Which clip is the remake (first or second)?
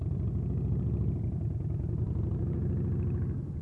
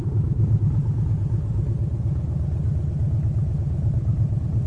first